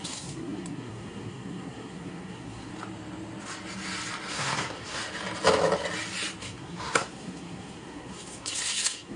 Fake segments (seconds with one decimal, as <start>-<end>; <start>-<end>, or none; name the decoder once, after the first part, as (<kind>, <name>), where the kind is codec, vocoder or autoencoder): 0.0-2.7 (codec, SNAC); 4.3-5.0; 6.4-9.2